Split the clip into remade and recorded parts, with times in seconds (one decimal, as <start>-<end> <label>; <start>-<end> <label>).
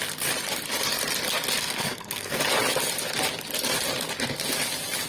0.0-1.6 recorded; 1.6-2.4 remade; 2.4-5.1 recorded